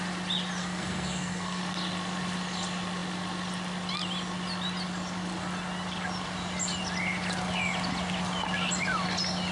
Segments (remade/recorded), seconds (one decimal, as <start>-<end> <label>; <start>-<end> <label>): 0.0-0.6 recorded; 0.6-1.6 remade; 1.6-9.5 recorded